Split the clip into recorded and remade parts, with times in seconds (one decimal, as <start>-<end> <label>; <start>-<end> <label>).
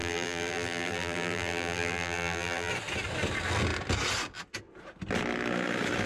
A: 0.0-2.7 remade; 2.7-6.1 recorded